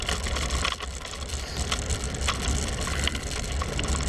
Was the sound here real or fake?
real